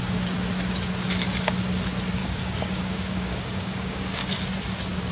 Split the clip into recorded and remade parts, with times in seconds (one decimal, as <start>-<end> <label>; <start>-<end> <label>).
0.0-2.2 recorded; 2.2-4.3 remade; 4.3-5.1 recorded